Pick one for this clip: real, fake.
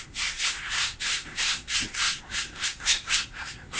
fake